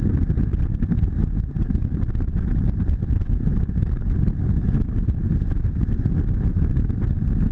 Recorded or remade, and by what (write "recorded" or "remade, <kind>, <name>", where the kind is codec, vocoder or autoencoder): recorded